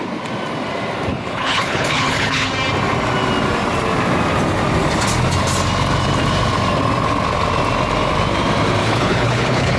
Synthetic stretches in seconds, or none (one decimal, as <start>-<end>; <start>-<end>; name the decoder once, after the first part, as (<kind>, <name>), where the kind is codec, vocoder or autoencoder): 1.1-2.5 (codec, HILCodec); 8.8-9.8